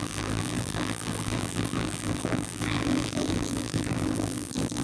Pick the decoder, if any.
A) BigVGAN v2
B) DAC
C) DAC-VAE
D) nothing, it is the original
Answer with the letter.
A